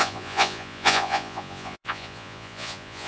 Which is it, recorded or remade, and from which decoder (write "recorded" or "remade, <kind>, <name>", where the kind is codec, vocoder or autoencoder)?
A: remade, vocoder, Vocos